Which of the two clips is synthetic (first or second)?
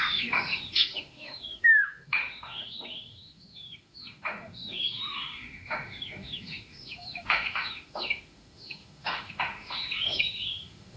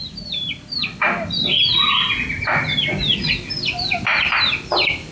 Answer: first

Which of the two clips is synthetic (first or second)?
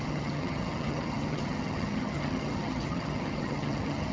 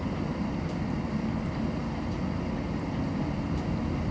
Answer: first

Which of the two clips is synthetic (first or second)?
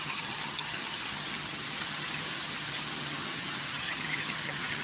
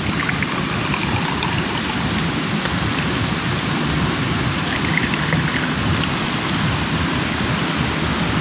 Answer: first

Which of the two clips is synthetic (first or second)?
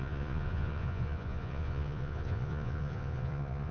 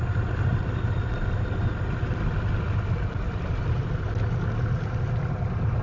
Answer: first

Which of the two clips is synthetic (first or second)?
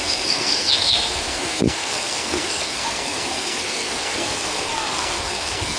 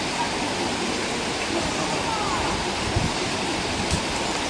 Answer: first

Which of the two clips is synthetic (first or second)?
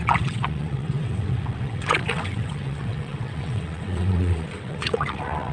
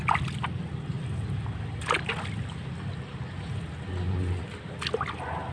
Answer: first